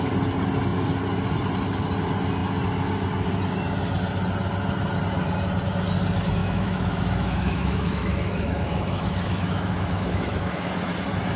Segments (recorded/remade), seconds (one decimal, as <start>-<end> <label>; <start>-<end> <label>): 0.0-6.4 recorded; 6.4-10.7 remade; 10.7-11.4 recorded